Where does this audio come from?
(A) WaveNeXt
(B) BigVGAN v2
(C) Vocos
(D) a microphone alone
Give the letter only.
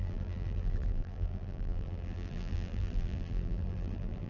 B